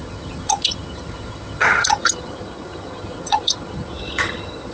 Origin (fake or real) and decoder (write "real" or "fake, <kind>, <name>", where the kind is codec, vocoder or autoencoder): fake, vocoder, HiFi-GAN